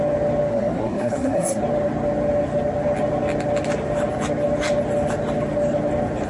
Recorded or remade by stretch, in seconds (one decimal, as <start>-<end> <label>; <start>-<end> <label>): 0.0-0.5 recorded; 0.5-1.6 remade; 1.6-6.3 recorded